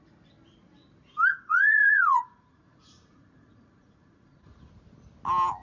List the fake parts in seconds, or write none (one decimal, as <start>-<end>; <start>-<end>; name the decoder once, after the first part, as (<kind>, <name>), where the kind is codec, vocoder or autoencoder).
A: 1.3-4.7 (vocoder, Vocos)